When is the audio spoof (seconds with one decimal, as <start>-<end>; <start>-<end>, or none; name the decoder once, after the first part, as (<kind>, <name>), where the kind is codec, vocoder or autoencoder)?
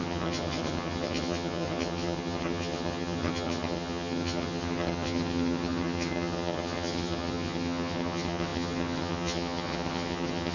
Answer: 0.0-10.5 (vocoder, HiFi-GAN)